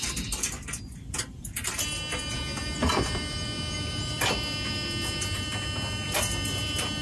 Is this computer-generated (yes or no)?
yes